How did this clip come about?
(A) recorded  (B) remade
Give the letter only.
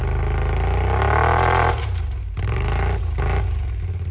A